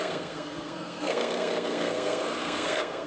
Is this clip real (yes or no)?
no